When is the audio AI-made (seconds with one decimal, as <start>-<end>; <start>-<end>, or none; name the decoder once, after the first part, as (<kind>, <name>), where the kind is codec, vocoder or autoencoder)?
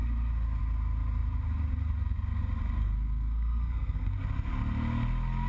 2.8-4.2 (codec, SNAC)